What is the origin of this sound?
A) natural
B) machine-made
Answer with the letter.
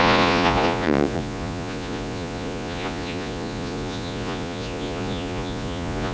B